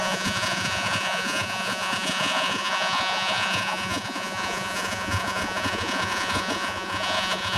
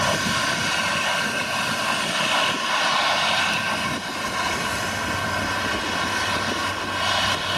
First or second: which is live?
second